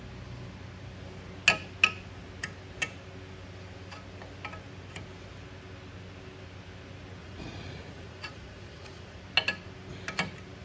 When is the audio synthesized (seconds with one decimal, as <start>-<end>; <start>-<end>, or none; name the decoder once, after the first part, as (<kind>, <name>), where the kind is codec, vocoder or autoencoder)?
7.2-9.2 (vocoder, Vocos)